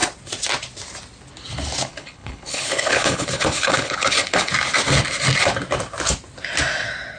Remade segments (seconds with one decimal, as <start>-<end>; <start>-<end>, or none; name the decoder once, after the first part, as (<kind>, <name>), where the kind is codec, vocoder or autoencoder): 1.9-4.5 (codec, HILCodec)